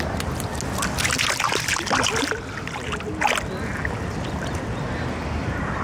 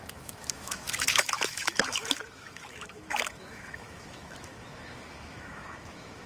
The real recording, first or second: first